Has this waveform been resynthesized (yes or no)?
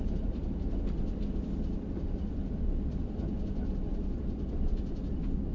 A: no